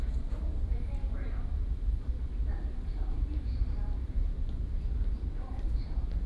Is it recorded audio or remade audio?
remade